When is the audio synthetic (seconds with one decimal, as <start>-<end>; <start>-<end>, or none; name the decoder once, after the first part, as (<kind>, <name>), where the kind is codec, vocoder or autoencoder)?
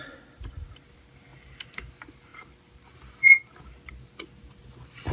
1.3-1.9 (vocoder, BigVGAN v2)